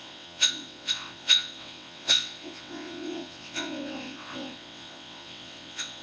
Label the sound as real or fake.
fake